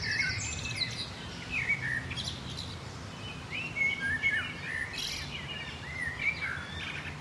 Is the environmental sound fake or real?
real